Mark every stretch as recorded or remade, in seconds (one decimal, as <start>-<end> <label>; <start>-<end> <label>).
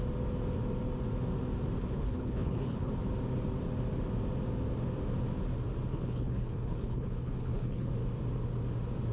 0.0-1.8 recorded; 1.8-2.9 remade; 2.9-5.9 recorded; 5.9-7.9 remade; 7.9-9.1 recorded